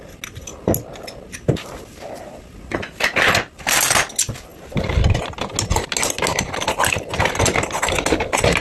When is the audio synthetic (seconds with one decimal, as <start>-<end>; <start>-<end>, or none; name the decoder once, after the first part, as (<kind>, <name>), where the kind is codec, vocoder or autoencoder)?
none